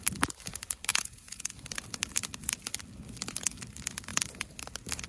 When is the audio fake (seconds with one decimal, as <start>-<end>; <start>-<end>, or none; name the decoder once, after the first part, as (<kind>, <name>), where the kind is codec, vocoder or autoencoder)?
0.9-1.5 (vocoder, Vocos)